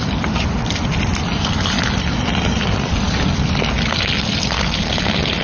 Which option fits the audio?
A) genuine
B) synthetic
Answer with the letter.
A